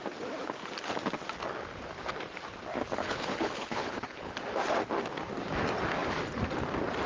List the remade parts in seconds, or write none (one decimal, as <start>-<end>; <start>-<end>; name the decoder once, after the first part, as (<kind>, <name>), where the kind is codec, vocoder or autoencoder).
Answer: 3.0-4.3 (codec, HILCodec)